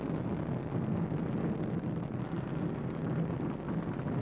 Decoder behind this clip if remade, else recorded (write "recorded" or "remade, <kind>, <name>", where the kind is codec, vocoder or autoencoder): recorded